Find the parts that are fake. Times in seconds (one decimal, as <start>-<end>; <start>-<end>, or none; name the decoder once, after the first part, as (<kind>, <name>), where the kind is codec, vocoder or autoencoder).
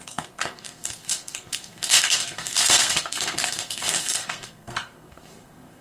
0.0-5.8 (codec, SNAC)